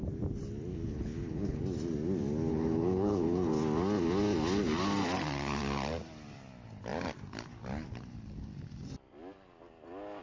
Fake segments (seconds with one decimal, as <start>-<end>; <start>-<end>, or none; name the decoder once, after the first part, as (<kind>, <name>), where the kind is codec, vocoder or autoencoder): 0.7-1.6 (codec, HILCodec); 2.5-3.5